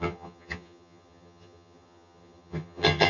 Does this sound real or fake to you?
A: fake